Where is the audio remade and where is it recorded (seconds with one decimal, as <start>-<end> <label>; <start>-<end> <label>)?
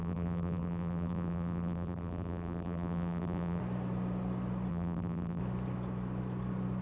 0.0-3.6 remade; 3.6-4.7 recorded; 4.7-5.4 remade; 5.4-6.8 recorded